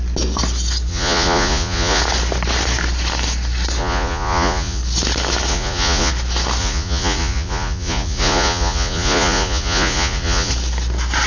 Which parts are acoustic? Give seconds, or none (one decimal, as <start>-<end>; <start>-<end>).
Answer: 0.0-0.9; 2.0-3.8; 4.8-5.5; 6.1-6.6; 10.5-11.3